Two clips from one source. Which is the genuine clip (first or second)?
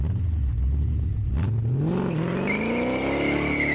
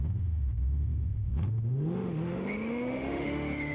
first